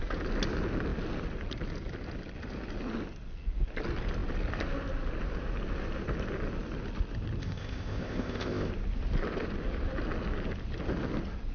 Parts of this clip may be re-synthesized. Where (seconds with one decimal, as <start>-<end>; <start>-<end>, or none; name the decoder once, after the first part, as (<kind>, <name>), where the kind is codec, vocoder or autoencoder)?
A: 7.4-8.7 (codec, ZipCodec)